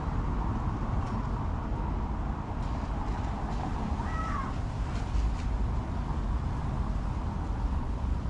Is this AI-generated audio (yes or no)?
no